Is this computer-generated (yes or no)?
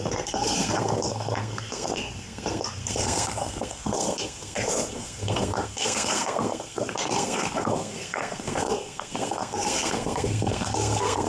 yes